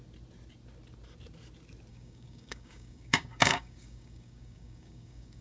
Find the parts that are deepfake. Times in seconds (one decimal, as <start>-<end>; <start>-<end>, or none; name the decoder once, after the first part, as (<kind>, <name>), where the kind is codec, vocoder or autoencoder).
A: 1.9-5.4 (codec, DAC)